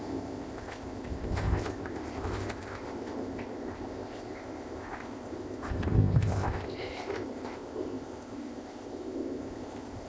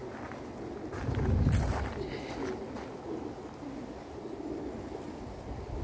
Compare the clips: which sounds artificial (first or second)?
first